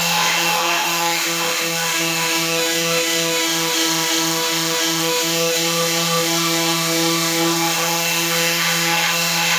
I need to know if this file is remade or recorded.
remade